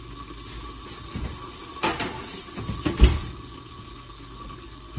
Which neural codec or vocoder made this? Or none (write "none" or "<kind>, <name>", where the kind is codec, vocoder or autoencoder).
none